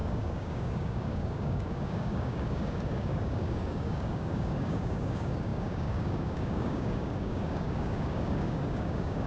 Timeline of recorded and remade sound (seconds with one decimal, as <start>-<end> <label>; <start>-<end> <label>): 0.0-9.3 remade